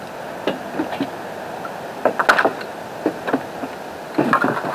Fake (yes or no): no